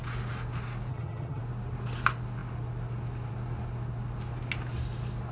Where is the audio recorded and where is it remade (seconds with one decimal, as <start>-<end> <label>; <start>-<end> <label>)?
0.0-0.9 recorded; 0.9-1.4 remade; 1.4-5.3 recorded